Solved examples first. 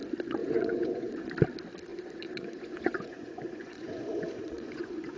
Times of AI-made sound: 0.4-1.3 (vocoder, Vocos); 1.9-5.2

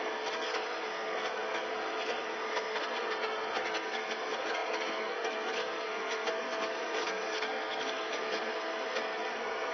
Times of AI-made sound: 0.0-9.7 (codec, SNAC)